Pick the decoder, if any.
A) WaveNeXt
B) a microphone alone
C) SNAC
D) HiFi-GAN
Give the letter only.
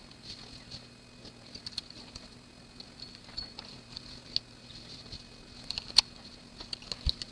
B